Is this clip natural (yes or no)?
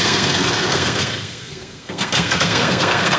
no